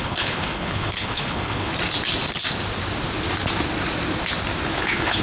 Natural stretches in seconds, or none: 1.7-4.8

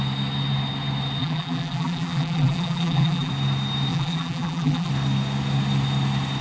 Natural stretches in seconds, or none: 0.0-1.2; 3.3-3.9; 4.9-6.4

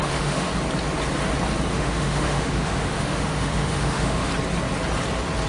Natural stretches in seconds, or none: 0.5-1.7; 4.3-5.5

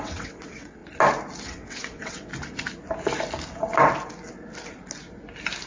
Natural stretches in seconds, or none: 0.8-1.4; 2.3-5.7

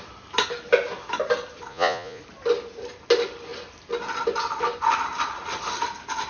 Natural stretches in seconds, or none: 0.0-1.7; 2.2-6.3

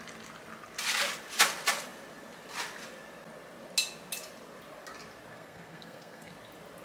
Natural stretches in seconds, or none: 0.0-5.3; 6.3-6.8

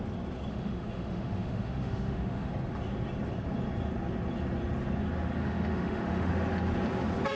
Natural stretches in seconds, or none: 0.0-0.5; 2.5-5.4; 6.3-7.4